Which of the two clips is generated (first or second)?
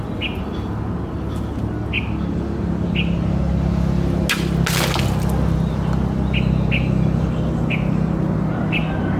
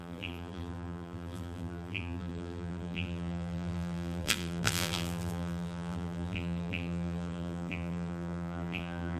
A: second